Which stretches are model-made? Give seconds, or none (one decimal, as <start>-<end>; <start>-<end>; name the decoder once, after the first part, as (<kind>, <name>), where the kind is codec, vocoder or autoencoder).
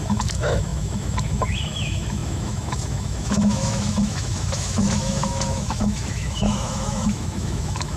0.0-8.0 (autoencoder, DAC-VAE)